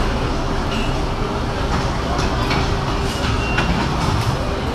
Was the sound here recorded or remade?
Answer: recorded